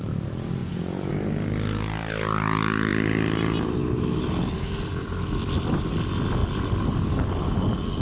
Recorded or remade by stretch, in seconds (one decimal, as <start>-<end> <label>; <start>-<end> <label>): 0.0-0.6 recorded; 0.6-1.1 remade; 1.1-8.0 recorded